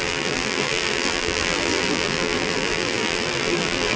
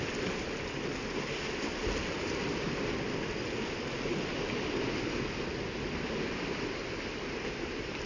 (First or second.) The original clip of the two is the second